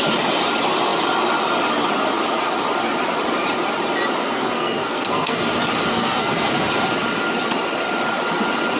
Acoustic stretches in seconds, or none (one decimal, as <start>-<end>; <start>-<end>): 0.0-4.2; 5.4-5.9; 6.5-8.8